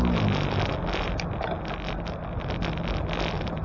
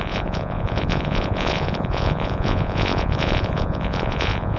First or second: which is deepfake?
second